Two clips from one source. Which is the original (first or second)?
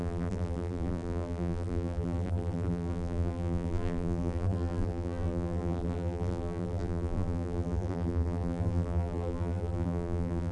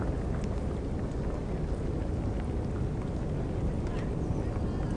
second